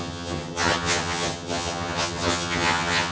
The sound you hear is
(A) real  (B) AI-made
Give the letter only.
B